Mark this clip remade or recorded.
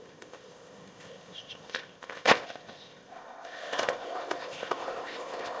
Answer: remade